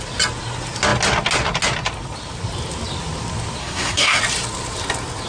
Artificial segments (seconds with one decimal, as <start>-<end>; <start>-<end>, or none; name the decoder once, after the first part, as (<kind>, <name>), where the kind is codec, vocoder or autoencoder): 3.6-4.2 (codec, SNAC)